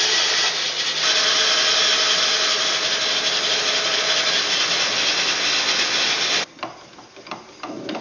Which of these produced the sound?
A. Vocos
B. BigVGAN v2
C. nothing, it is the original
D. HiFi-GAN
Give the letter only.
C